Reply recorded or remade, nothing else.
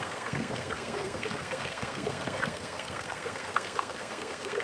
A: remade